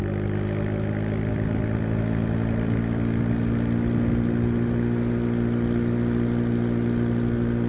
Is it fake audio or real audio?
real